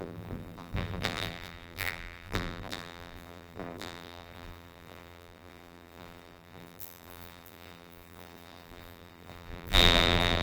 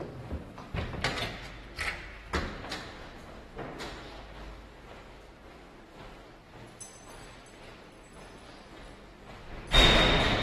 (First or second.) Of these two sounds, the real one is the second